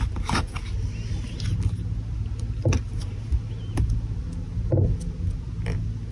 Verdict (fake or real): real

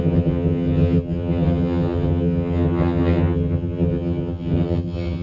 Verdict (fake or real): fake